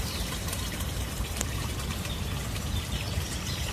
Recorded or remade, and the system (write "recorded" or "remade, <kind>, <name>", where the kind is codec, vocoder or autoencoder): remade, vocoder, BigVGAN v2